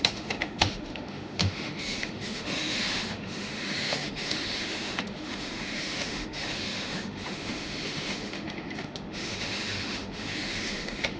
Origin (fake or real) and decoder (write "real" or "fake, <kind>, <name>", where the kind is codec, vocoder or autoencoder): fake, autoencoder, DAC-VAE